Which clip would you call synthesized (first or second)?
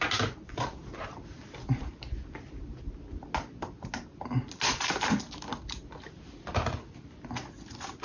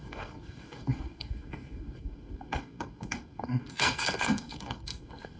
second